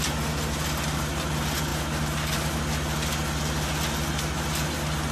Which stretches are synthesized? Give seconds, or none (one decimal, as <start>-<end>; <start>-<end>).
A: none